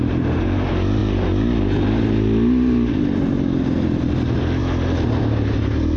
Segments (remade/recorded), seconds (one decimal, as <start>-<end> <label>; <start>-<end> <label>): 0.0-6.0 recorded

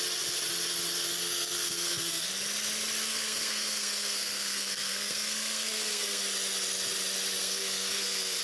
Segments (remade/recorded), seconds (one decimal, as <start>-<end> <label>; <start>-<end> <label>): 0.0-1.2 recorded; 1.2-2.3 remade; 2.3-3.1 recorded; 3.1-6.2 remade; 6.2-7.4 recorded; 7.4-8.4 remade

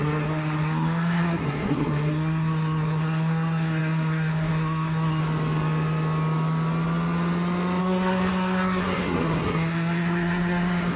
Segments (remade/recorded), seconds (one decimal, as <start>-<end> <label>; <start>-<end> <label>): 0.0-5.2 remade; 5.2-7.8 recorded; 7.8-11.0 remade